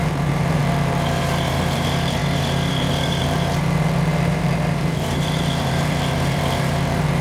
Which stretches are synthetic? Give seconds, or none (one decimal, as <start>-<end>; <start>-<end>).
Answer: 0.0-2.2; 2.7-7.2